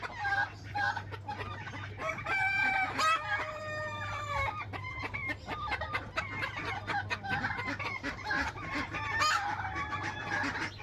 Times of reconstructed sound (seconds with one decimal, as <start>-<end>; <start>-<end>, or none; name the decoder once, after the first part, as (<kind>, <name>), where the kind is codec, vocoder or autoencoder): 2.0-3.6 (vocoder, BigVGAN v2)